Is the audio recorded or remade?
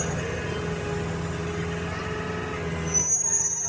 recorded